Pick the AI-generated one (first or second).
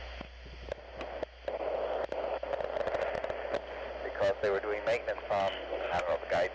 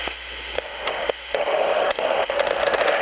second